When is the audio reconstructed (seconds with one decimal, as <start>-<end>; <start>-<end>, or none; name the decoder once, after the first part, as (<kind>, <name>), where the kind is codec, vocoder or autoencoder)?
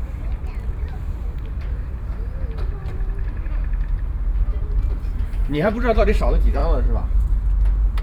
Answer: 0.0-0.4 (vocoder, BigVGAN v2); 2.0-2.8; 4.4-6.6